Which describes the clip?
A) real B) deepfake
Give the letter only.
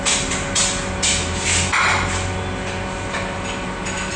A